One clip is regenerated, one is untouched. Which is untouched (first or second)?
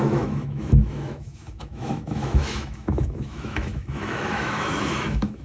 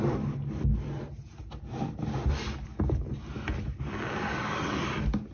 second